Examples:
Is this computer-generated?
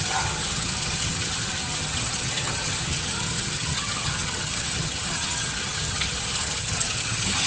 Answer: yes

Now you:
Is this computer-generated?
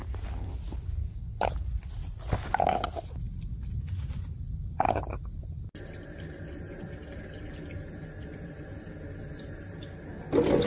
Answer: no